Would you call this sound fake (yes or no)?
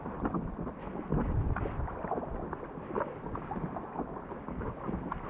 no